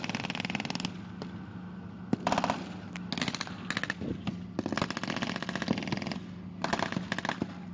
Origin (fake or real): real